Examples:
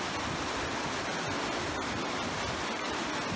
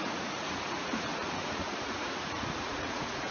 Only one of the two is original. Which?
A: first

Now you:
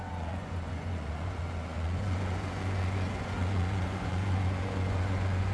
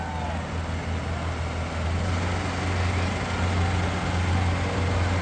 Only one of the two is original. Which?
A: second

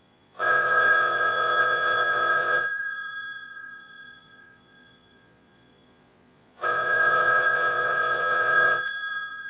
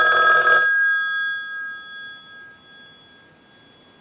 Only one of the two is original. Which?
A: second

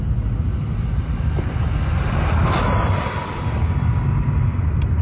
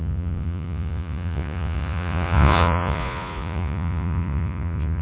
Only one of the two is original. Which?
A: first